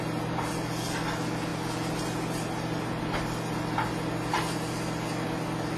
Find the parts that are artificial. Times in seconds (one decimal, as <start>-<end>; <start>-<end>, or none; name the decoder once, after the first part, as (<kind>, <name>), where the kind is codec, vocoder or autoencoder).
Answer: none